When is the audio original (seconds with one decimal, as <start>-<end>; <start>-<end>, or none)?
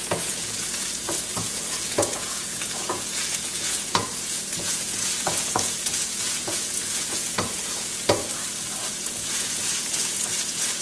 8.3-8.9